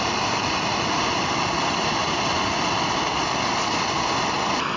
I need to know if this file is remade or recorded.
recorded